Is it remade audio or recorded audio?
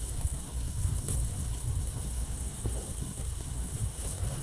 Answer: remade